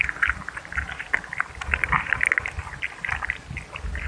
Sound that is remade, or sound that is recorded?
recorded